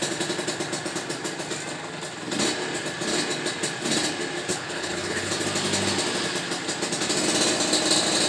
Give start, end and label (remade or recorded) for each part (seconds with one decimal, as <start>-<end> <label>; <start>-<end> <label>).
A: 0.0-4.5 recorded; 4.5-5.3 remade; 5.3-8.3 recorded